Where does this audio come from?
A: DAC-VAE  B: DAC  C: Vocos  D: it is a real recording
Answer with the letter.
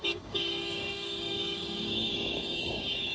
B